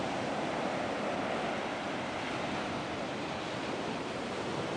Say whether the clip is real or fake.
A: real